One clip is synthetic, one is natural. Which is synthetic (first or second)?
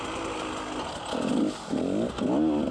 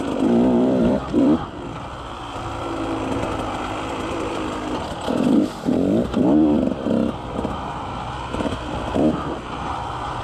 second